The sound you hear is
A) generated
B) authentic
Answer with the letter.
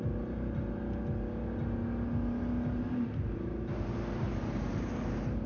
B